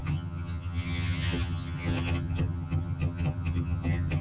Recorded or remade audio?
remade